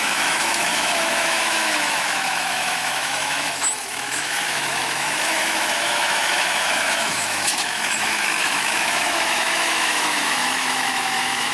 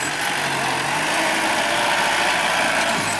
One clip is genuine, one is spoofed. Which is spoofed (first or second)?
first